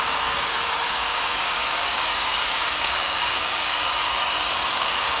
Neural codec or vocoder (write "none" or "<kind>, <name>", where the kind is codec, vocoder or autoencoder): codec, DAC